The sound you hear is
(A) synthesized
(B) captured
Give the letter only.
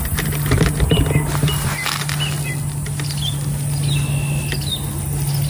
B